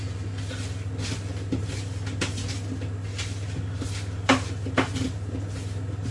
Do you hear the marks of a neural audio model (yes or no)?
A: no